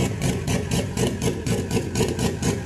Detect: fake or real fake